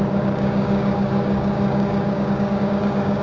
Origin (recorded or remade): remade